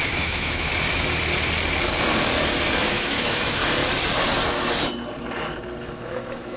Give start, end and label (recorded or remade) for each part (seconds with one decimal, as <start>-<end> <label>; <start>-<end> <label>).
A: 0.0-0.7 remade; 0.7-2.9 recorded; 2.9-3.6 remade; 3.6-5.8 recorded; 5.8-6.6 remade